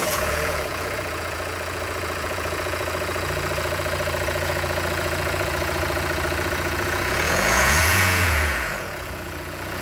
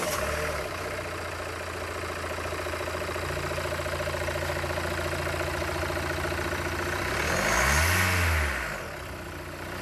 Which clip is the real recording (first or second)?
second